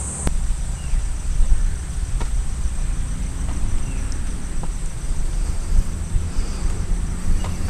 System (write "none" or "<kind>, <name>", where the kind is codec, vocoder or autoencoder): vocoder, BigVGAN v2